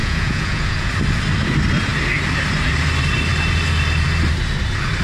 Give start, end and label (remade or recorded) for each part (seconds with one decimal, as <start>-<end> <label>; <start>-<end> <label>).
0.0-0.9 remade; 0.9-5.0 recorded